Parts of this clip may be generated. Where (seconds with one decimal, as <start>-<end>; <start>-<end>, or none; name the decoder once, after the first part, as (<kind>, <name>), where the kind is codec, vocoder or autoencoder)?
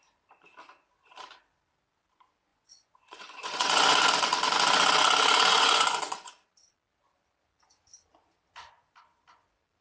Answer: 2.5-4.1 (vocoder, Vocos); 5.5-6.3